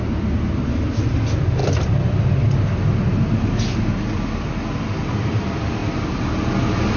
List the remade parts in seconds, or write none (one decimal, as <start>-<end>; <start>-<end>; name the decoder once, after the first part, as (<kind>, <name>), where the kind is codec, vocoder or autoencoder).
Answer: none